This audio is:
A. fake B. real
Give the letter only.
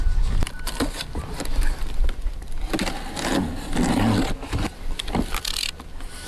B